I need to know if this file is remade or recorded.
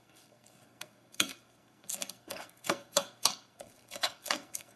remade